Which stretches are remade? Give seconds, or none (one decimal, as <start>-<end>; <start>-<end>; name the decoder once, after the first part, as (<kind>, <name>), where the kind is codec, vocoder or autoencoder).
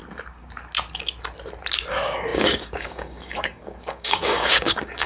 1.9-5.1 (codec, DAC)